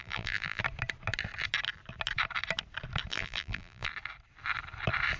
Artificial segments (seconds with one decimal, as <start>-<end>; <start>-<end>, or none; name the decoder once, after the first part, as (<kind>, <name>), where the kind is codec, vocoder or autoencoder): 0.0-0.6 (vocoder, BigVGAN v2); 3.1-3.9